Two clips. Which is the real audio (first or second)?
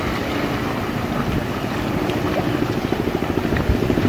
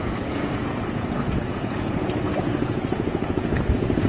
first